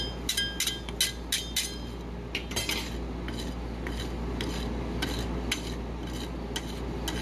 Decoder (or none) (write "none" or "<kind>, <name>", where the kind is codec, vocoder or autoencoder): none